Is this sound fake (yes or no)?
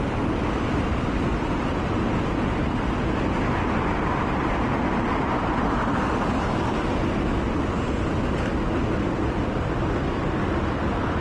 no